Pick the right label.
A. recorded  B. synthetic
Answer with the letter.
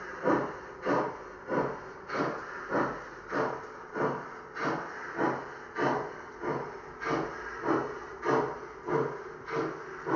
A